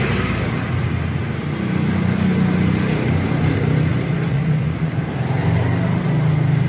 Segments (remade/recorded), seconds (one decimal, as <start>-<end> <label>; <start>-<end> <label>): 0.0-3.9 recorded; 3.9-5.0 remade; 5.0-6.7 recorded